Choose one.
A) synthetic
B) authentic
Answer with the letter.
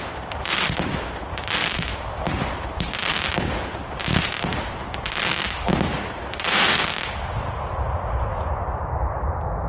A